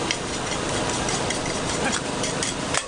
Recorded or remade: remade